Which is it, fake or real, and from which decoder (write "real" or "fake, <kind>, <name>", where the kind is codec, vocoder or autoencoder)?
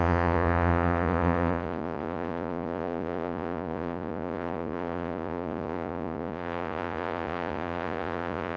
fake, vocoder, Vocos